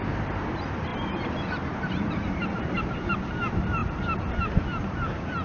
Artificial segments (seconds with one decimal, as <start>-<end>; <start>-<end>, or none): 0.0-0.9; 2.1-3.8; 4.8-5.4